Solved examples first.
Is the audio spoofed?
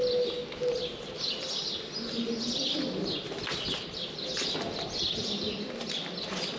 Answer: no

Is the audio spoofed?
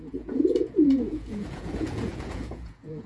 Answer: yes